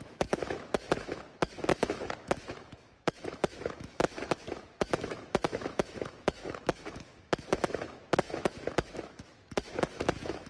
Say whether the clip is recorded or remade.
remade